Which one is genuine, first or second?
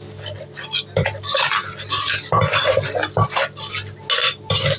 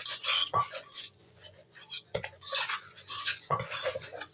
first